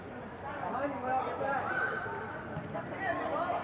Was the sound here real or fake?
real